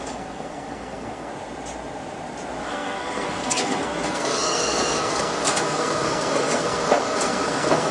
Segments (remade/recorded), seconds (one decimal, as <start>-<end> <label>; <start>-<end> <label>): 0.0-1.3 remade; 1.3-2.7 recorded; 2.7-7.9 remade